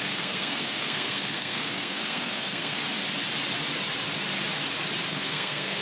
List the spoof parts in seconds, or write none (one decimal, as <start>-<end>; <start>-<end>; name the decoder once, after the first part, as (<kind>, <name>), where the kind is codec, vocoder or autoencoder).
0.0-2.8 (codec, SNAC); 5.1-5.8